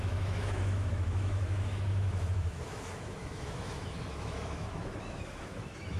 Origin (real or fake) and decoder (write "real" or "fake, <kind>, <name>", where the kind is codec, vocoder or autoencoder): fake, autoencoder, DAC-VAE